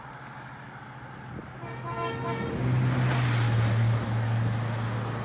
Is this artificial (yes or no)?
no